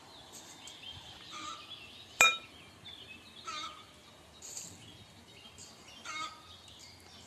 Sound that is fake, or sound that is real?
real